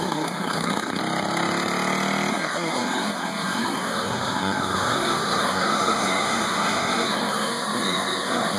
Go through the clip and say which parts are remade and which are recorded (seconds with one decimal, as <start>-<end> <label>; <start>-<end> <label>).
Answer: 0.0-1.0 remade; 1.0-2.3 recorded; 2.3-8.6 remade